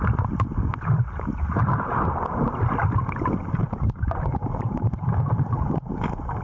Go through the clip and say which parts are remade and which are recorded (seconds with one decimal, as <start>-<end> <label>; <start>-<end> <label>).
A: 0.0-1.6 recorded; 1.6-2.6 remade; 2.6-3.6 recorded; 3.6-5.9 remade; 5.9-6.4 recorded